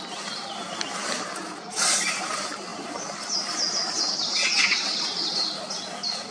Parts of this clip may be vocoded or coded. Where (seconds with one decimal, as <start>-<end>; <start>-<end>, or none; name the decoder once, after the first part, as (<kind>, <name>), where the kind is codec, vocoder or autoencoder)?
none